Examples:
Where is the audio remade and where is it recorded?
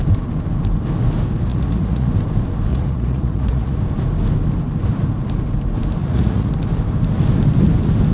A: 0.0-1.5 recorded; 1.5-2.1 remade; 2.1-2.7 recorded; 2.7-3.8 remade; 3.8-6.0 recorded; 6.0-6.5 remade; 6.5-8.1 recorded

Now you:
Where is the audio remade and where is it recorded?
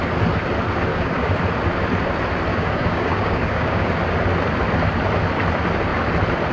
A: 0.0-0.9 recorded; 0.9-1.4 remade; 1.4-2.5 recorded; 2.5-3.9 remade; 3.9-6.5 recorded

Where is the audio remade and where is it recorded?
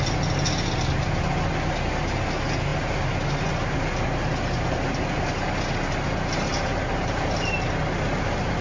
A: 0.0-8.6 recorded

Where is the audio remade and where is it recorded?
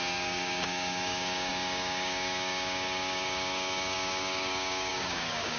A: 0.0-5.6 remade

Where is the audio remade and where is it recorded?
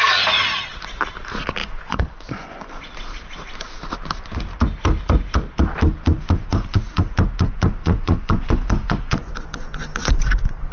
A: 0.0-1.6 recorded; 1.6-2.8 remade; 2.8-7.8 recorded; 7.8-10.7 remade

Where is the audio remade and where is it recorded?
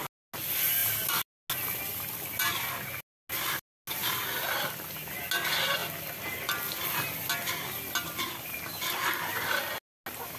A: 0.0-10.4 recorded